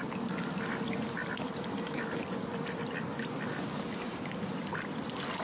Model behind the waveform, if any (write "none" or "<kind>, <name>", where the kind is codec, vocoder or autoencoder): none